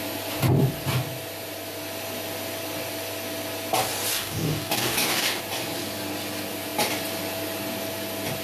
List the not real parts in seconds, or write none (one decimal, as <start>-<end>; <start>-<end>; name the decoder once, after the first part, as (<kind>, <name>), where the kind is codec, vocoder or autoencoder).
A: 4.1-5.4 (codec, DAC)